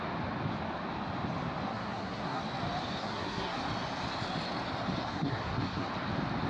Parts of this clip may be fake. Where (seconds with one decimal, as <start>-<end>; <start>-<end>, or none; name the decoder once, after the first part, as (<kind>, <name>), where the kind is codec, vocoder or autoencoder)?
1.7-2.4 (codec, SNAC); 3.0-3.6; 5.0-5.9